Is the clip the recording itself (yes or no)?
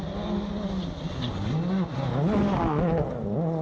yes